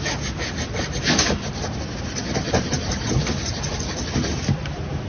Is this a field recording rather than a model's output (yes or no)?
yes